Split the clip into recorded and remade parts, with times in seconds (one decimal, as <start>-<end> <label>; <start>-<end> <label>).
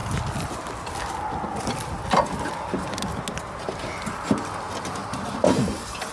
0.0-6.1 recorded